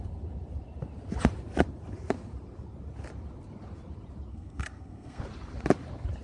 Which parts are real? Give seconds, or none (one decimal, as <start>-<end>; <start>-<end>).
0.0-4.3; 5.2-6.2